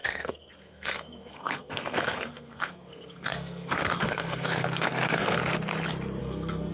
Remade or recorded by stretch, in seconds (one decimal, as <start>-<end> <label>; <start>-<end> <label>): 0.0-5.4 remade; 5.4-6.2 recorded; 6.2-6.7 remade